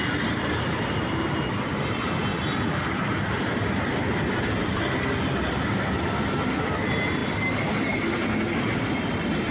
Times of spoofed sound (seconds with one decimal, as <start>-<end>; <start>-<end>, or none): none

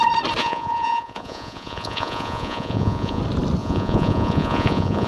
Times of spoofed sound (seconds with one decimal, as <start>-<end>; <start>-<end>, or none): 0.4-3.2; 3.6-5.1

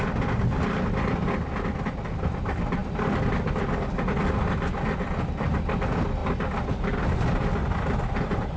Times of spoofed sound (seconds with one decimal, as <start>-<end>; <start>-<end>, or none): none